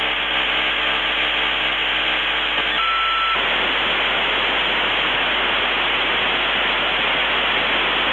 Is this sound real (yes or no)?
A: yes